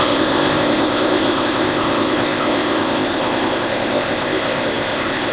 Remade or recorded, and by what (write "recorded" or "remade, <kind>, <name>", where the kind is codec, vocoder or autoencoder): remade, codec, ZipCodec